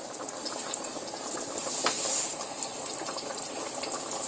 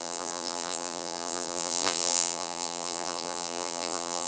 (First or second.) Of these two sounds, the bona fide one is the first